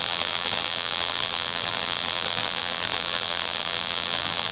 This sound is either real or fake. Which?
fake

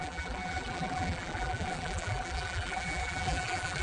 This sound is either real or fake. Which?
fake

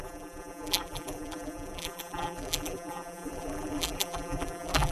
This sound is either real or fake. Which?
fake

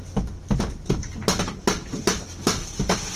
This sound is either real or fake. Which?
real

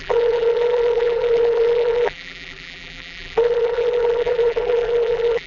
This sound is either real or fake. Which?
fake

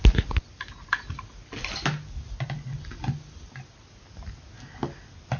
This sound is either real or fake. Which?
real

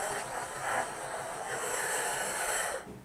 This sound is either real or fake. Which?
real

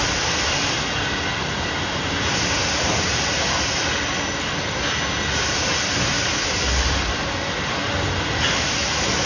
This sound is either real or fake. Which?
real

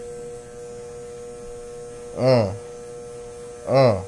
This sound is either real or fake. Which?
real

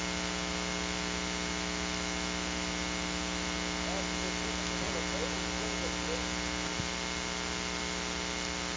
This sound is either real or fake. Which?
real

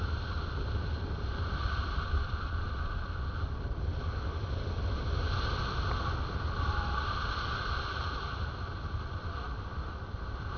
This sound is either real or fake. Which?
real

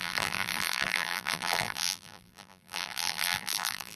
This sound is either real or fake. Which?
fake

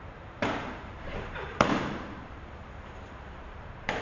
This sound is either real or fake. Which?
fake